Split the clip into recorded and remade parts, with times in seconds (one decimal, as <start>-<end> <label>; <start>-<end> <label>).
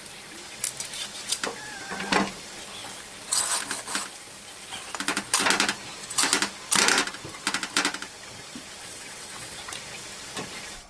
0.0-8.8 recorded; 8.8-9.6 remade; 9.6-10.9 recorded